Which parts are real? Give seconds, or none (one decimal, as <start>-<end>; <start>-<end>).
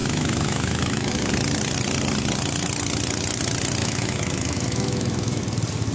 1.3-3.8; 5.4-5.9